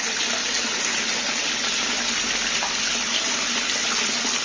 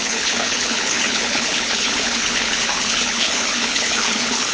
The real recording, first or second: first